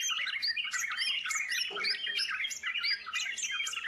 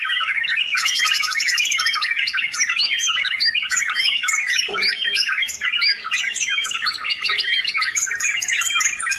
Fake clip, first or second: second